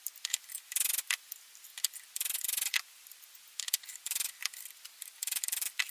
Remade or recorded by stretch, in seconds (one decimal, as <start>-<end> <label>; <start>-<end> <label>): 0.0-5.9 recorded